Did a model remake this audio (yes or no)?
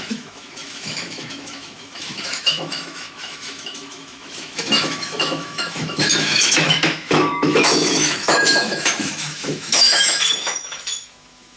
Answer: yes